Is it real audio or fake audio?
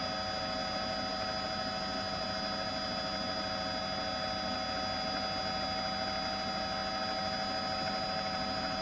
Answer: real